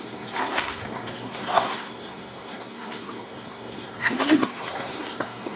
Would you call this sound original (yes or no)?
no